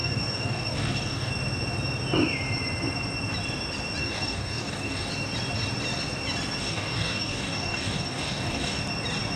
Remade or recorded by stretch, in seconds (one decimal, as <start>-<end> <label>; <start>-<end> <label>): 0.0-1.3 remade; 1.3-4.0 recorded; 4.0-5.1 remade; 5.1-6.6 recorded; 6.6-8.8 remade; 8.8-9.4 recorded

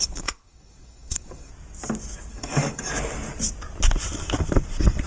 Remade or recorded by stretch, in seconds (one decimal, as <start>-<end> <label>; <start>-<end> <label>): 0.0-1.5 remade; 1.5-2.3 recorded; 2.3-2.9 remade; 2.9-5.1 recorded

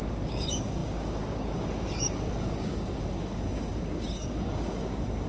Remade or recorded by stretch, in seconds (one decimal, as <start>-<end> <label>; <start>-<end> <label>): 0.0-5.3 remade

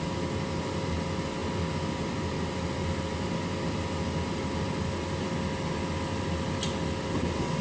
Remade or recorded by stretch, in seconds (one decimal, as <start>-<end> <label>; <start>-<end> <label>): 0.0-7.6 recorded

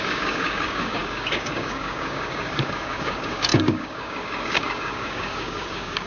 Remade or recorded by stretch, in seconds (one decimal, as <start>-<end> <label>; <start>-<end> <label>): 0.0-6.1 remade

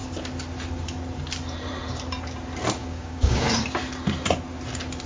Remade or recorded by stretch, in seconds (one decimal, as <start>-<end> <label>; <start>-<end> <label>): 0.0-2.8 recorded; 2.8-3.5 remade; 3.5-5.1 recorded